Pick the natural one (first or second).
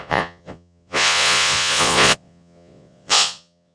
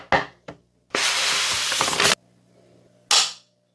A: second